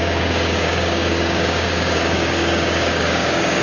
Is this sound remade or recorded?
remade